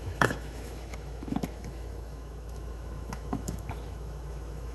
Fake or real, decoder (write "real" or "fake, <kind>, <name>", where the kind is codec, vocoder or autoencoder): fake, autoencoder, DAC-VAE